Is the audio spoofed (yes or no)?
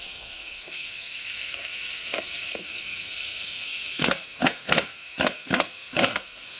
yes